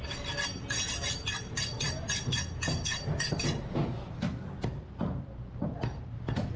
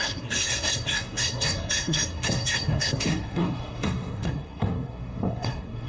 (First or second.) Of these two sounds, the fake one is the second